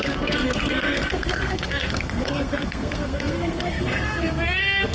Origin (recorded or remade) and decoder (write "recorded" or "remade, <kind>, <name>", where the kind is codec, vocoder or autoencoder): remade, codec, SNAC